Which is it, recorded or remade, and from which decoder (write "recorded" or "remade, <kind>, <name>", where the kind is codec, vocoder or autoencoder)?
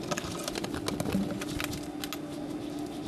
recorded